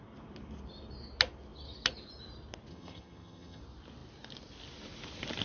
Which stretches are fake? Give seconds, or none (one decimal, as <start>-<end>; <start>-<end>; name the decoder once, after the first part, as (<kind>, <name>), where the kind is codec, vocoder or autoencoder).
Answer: 2.7-3.6 (vocoder, HiFi-GAN)